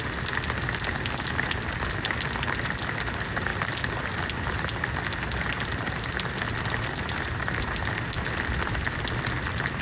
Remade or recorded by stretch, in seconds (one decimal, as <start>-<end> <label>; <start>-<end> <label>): 0.0-9.8 recorded